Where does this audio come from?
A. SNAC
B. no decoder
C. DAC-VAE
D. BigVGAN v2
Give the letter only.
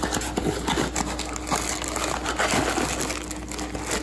B